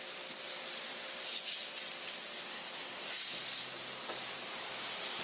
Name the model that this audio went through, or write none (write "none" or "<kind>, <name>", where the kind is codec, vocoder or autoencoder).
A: none